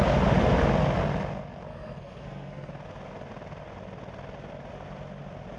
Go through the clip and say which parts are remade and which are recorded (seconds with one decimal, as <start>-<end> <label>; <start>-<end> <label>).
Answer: 0.0-1.7 recorded; 1.7-2.7 remade; 2.7-5.6 recorded